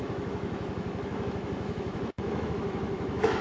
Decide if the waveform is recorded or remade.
remade